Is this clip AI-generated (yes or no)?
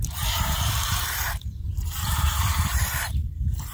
yes